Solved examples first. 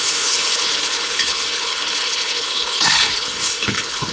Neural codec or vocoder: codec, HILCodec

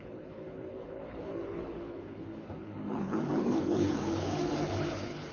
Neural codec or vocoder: codec, HILCodec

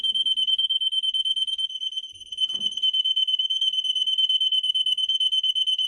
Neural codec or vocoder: none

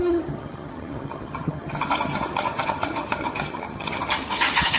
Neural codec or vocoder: vocoder, HiFi-GAN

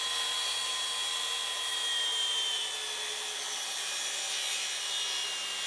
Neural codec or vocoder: vocoder, BigVGAN v2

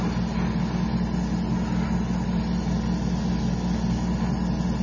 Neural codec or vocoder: none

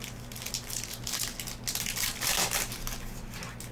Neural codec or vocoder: none